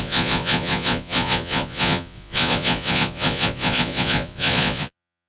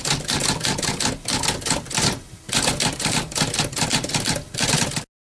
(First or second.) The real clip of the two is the second